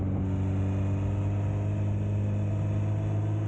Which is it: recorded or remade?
recorded